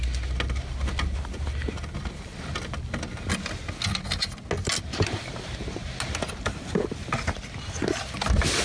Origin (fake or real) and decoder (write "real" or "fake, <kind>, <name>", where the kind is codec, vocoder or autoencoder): real